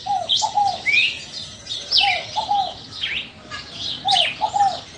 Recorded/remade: recorded